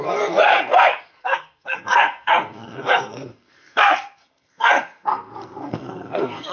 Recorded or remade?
remade